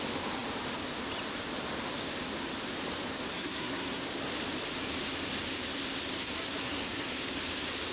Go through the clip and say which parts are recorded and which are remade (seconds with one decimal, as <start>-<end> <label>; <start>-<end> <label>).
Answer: 0.0-3.3 recorded; 3.3-4.0 remade; 4.0-6.2 recorded; 6.2-7.2 remade; 7.2-7.9 recorded

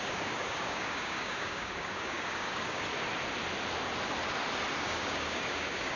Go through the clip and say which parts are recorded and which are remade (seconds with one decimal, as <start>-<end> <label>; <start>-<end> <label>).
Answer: 0.0-2.9 remade; 2.9-4.8 recorded; 4.8-6.0 remade

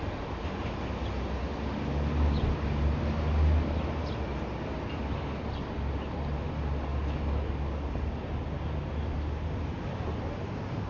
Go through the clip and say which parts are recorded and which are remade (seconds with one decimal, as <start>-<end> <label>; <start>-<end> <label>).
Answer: 0.0-10.9 recorded

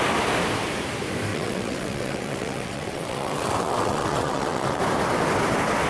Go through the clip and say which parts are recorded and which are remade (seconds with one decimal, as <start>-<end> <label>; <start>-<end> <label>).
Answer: 0.0-1.3 recorded; 1.3-4.8 remade; 4.8-5.9 recorded